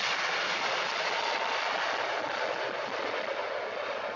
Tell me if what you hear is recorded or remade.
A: recorded